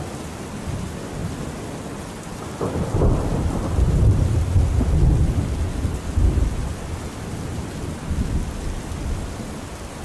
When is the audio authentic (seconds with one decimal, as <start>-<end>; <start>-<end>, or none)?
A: 0.0-10.0